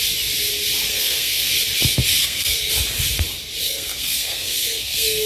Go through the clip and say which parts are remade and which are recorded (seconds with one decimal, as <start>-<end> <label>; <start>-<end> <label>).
0.0-0.9 recorded; 0.9-1.5 remade; 1.5-2.2 recorded; 2.2-2.7 remade; 2.7-3.6 recorded; 3.6-5.3 remade